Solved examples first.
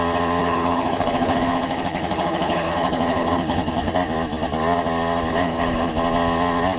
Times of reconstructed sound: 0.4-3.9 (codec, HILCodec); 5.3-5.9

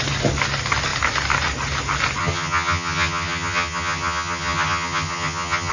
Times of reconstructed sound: 2.2-5.7 (vocoder, HiFi-GAN)